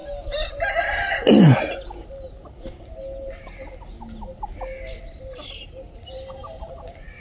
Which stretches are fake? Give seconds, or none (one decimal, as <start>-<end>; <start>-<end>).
5.3-6.7